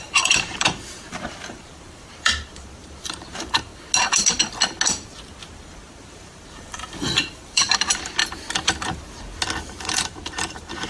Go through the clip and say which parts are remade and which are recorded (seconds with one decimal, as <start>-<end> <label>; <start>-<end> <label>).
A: 0.0-3.7 remade; 3.7-5.4 recorded; 5.4-8.2 remade; 8.2-9.6 recorded; 9.6-10.9 remade